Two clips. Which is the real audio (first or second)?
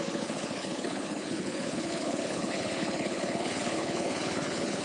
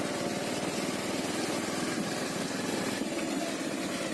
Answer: second